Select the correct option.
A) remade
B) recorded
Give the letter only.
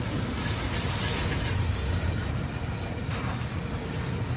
B